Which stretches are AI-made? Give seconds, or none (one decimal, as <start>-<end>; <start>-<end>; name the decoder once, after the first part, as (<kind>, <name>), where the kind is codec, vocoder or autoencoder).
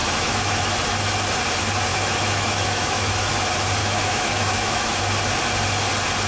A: 0.0-0.7 (autoencoder, DAC-VAE); 1.9-3.3; 3.8-5.0